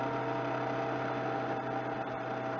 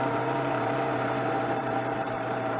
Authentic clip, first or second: first